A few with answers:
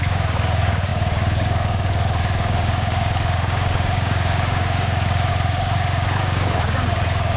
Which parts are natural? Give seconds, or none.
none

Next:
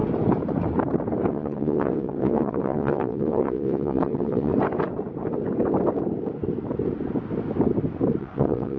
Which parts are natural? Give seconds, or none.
0.0-1.3; 4.5-8.2

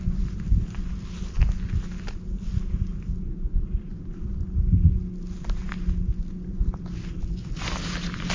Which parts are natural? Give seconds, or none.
0.0-8.3

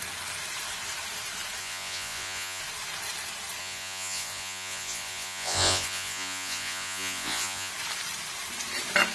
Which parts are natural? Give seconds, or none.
0.0-1.6; 2.6-3.6; 7.7-9.1

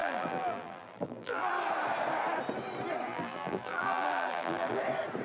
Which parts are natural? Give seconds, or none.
1.5-3.1; 4.8-5.2

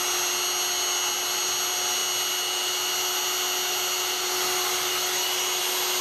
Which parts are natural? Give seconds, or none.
0.0-6.0

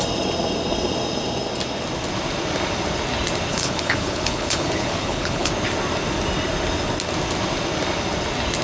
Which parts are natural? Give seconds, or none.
0.0-3.5; 5.5-8.6

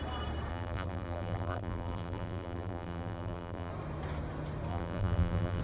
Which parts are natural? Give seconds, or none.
0.0-0.5; 3.7-4.7